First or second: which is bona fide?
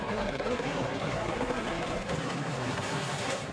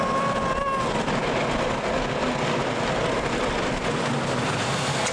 second